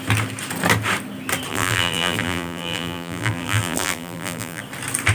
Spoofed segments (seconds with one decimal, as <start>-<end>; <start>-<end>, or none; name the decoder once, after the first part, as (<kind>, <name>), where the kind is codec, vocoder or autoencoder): 1.5-4.6 (vocoder, BigVGAN v2)